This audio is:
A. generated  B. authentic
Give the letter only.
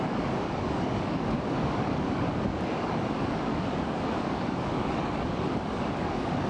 A